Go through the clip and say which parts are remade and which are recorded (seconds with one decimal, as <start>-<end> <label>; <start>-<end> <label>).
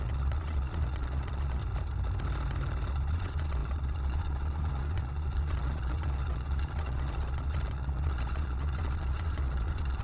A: 0.0-1.6 remade; 1.6-2.9 recorded; 2.9-10.0 remade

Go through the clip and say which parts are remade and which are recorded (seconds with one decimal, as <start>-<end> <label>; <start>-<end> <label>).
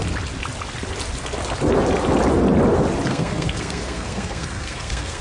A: 0.0-3.1 recorded; 3.1-5.2 remade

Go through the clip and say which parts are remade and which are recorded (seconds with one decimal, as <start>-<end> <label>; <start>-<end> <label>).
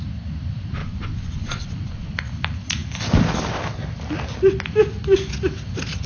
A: 0.0-0.8 recorded; 0.8-2.1 remade; 2.1-6.1 recorded